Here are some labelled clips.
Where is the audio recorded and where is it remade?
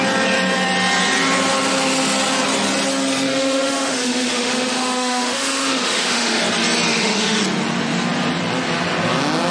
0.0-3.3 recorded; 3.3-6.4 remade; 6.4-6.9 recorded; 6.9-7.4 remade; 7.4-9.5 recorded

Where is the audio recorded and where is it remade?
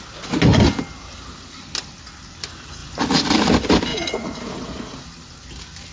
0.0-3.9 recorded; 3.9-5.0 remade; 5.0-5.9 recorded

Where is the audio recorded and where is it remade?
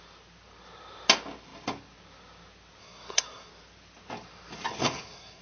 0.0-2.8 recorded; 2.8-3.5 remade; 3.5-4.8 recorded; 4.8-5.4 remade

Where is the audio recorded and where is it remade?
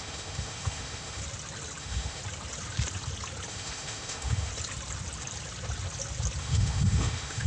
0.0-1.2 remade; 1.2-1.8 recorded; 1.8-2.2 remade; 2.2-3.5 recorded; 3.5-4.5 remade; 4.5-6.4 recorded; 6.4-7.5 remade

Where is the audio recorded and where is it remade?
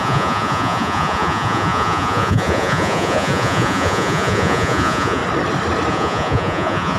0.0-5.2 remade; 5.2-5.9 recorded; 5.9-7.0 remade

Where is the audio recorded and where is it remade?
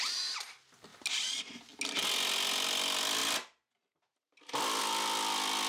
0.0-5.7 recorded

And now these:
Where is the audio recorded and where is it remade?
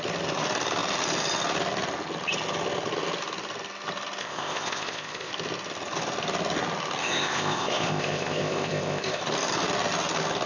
0.0-4.2 recorded; 4.2-5.3 remade; 5.3-7.0 recorded; 7.0-9.2 remade; 9.2-10.5 recorded